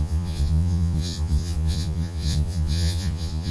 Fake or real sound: fake